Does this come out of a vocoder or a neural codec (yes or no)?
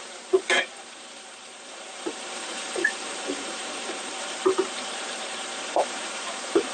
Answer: yes